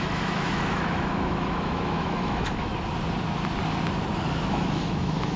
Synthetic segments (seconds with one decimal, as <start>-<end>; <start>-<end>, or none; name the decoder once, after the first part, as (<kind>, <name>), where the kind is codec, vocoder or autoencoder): 0.0-2.7 (autoencoder, DAC-VAE); 4.3-5.4